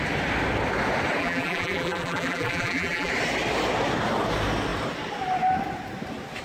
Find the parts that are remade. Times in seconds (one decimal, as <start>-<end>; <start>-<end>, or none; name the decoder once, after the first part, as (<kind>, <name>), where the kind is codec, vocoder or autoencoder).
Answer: 1.2-3.1 (vocoder, BigVGAN v2)